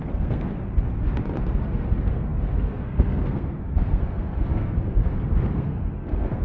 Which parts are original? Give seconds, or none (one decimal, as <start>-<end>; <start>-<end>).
0.5-1.6